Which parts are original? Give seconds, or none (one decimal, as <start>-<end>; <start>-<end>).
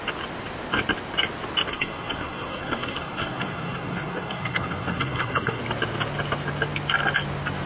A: 0.0-1.7; 5.6-7.7